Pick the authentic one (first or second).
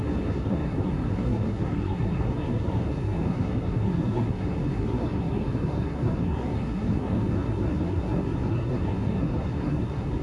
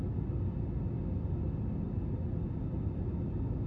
second